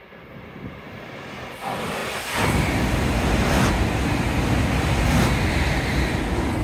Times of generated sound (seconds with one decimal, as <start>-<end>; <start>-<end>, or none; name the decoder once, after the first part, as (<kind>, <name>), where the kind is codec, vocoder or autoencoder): none